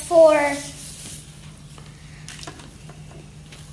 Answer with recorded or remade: recorded